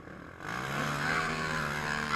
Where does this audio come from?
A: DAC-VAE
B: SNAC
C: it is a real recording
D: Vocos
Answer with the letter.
C